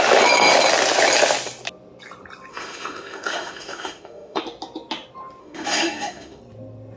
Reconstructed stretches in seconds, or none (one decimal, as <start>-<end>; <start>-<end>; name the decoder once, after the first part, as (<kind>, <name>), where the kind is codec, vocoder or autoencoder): 2.5-4.4 (autoencoder, DAC-VAE); 5.4-6.4